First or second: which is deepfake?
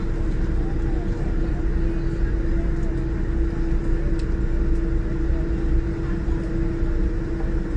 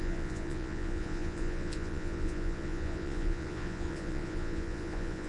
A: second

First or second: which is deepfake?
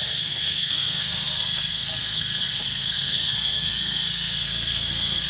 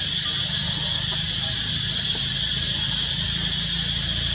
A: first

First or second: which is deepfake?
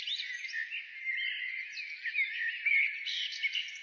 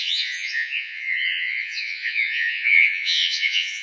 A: second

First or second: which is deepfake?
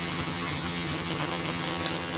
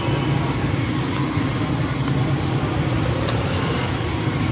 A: first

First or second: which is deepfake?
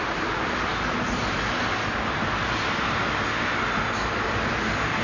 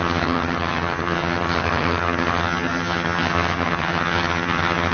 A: second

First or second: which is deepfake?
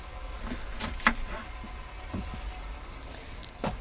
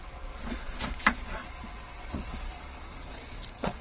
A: second